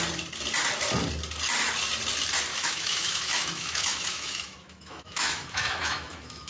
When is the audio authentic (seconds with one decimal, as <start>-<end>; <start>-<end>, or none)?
0.0-2.5